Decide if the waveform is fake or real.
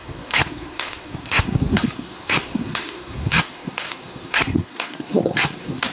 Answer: fake